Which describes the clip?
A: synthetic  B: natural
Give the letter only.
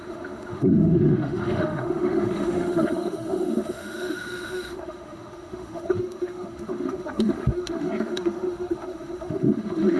A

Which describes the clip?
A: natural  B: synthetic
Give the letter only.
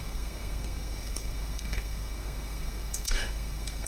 B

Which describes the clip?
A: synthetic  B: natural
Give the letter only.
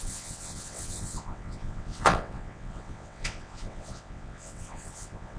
A